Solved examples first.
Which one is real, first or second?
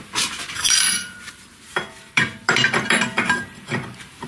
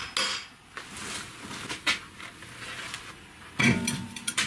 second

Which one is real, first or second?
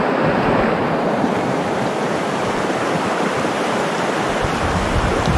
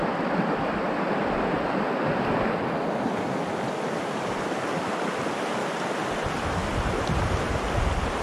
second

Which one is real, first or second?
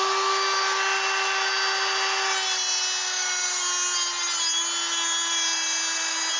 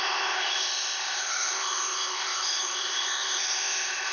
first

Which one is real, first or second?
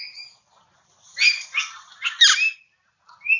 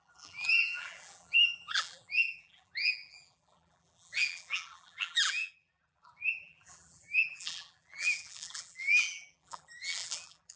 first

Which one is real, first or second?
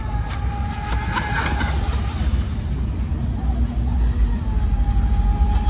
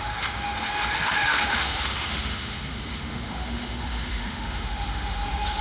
first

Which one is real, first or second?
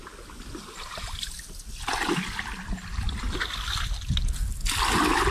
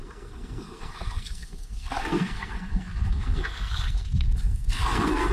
first